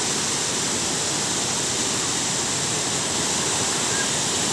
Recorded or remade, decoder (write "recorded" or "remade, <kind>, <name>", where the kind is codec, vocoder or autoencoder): recorded